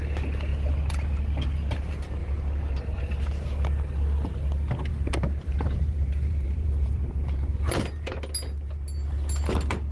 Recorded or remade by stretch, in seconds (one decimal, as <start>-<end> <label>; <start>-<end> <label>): 0.0-2.2 recorded; 2.2-3.0 remade; 3.0-4.9 recorded; 4.9-8.2 remade; 8.2-9.9 recorded